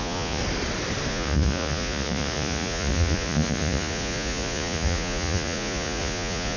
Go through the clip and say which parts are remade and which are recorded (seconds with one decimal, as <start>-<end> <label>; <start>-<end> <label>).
0.0-0.4 remade; 0.4-1.1 recorded; 1.1-6.6 remade